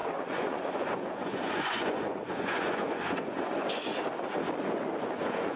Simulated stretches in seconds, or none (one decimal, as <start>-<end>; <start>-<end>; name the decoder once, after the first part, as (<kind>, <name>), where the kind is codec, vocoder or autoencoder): 0.0-3.9 (vocoder, Vocos); 4.6-5.6